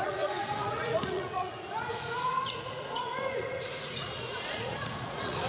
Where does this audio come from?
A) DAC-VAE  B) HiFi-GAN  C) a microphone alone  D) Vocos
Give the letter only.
D